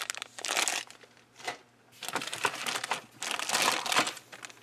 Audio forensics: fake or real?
real